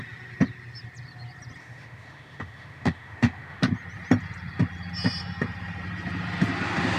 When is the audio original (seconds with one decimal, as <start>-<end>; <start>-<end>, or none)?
0.0-1.6; 3.6-7.0